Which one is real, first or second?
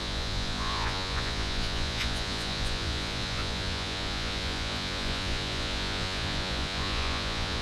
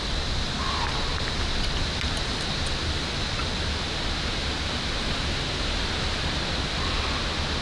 second